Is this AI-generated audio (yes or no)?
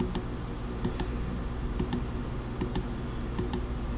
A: no